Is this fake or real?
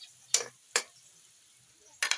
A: real